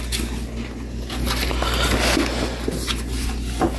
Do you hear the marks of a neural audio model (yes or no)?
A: no